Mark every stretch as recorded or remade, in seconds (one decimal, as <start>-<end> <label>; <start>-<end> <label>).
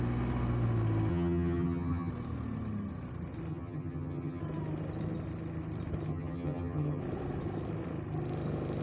0.0-1.1 recorded; 1.1-2.1 remade; 2.1-3.5 recorded; 3.5-4.4 remade; 4.4-6.1 recorded; 6.1-7.0 remade; 7.0-8.8 recorded